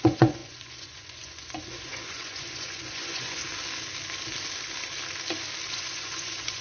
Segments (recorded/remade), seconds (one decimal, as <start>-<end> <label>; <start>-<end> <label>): 0.0-3.4 remade; 3.4-5.7 recorded; 5.7-6.6 remade